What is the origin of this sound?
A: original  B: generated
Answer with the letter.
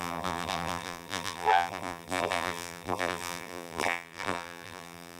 B